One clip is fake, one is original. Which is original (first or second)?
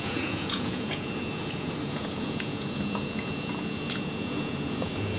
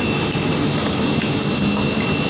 second